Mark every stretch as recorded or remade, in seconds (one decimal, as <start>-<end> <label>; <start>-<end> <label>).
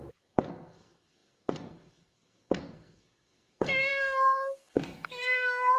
0.0-5.8 remade